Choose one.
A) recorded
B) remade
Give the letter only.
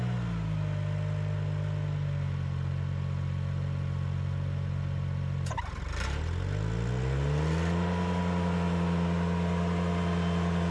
A